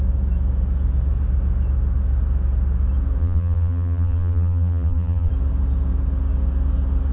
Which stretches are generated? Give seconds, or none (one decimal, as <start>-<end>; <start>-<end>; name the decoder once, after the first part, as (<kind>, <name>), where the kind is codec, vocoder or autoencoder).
3.2-5.3 (vocoder, BigVGAN v2)